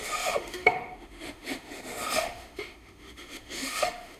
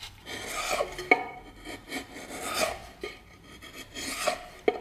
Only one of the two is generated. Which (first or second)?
first